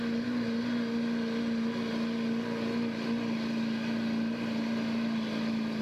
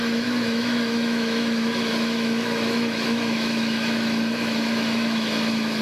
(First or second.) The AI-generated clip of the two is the second